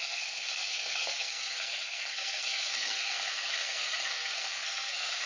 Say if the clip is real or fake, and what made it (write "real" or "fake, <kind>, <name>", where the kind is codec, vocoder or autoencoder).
fake, codec, SNAC